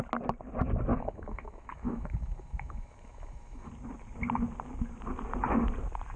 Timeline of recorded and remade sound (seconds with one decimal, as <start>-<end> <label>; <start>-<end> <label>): 0.0-0.9 recorded; 0.9-3.7 remade; 3.7-6.2 recorded